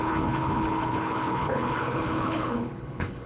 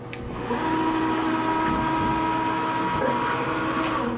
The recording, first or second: second